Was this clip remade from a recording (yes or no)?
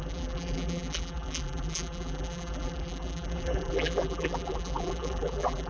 yes